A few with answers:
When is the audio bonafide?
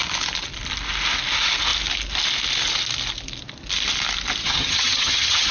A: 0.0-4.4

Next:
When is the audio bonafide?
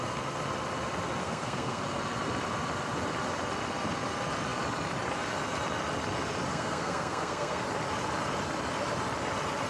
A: 0.0-1.2; 1.8-6.5; 7.6-9.7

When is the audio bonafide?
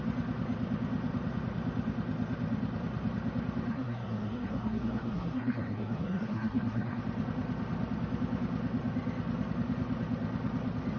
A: 0.0-3.7; 7.0-11.0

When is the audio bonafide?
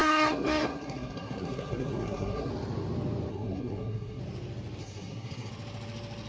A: 2.5-3.3; 4.2-4.8; 5.5-6.3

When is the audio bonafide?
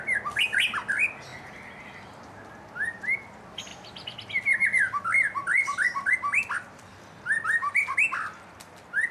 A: 0.0-1.3; 2.2-3.7; 8.6-9.1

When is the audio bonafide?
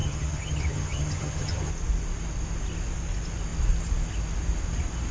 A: 1.7-5.1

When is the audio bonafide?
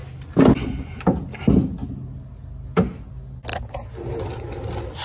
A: 0.0-5.0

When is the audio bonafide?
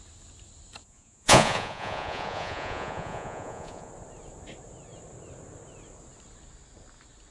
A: 0.0-0.8; 3.9-7.3